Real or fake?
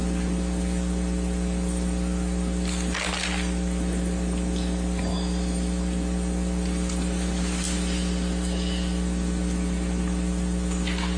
real